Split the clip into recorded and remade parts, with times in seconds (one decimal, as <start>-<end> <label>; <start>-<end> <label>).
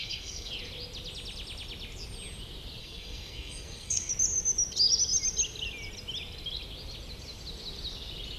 0.0-0.5 remade; 0.5-2.8 recorded; 2.8-4.1 remade; 4.1-8.4 recorded